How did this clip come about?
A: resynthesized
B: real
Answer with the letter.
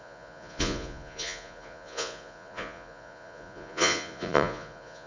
A